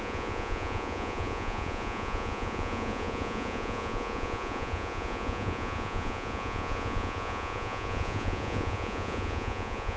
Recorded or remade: remade